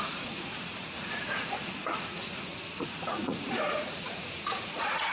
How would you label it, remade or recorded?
remade